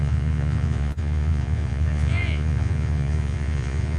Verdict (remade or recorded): remade